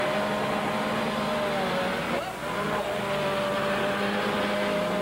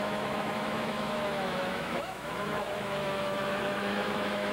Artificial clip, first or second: second